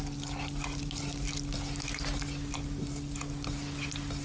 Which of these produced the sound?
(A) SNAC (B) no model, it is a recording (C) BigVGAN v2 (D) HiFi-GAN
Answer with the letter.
B